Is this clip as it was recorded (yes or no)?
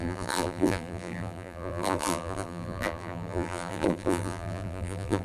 no